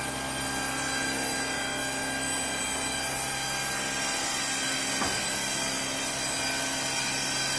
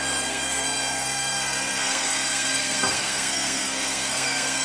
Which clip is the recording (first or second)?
first